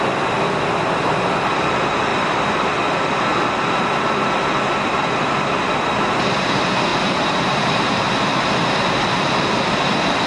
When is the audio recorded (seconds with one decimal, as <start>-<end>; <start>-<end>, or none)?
0.0-2.1; 2.7-6.9; 7.5-10.3